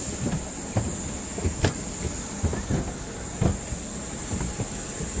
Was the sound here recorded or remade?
recorded